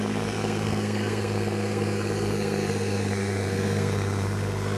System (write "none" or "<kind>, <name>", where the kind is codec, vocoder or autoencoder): codec, SNAC